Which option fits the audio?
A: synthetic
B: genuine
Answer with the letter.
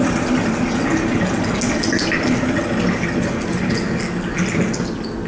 B